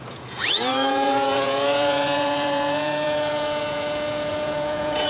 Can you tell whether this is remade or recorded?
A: remade